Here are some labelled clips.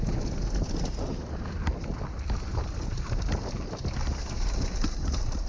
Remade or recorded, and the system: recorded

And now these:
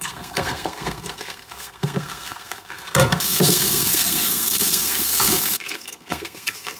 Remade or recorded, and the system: remade, codec, SNAC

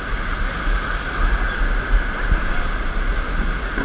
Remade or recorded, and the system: recorded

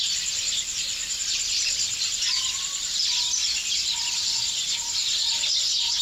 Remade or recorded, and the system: recorded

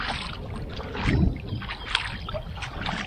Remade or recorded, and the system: recorded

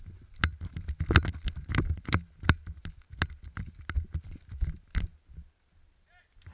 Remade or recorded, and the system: recorded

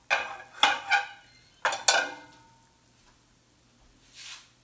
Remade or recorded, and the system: recorded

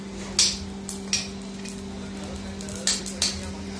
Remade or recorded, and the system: recorded